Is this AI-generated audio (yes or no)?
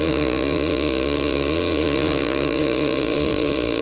yes